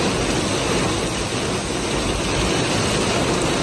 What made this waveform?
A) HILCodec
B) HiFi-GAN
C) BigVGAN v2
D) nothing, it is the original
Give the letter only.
D